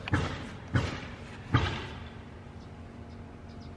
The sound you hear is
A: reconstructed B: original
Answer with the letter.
B